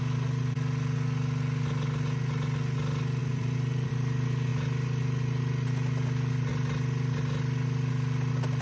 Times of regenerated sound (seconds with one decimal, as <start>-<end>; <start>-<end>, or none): 3.2-3.9